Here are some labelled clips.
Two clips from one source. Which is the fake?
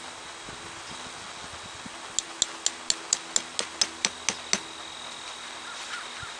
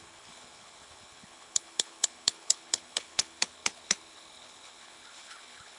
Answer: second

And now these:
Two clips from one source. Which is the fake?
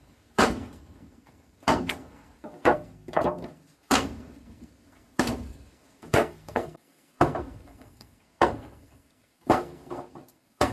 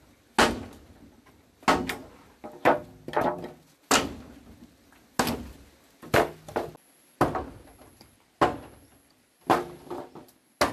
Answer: first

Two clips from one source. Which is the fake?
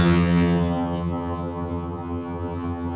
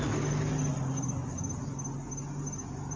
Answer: first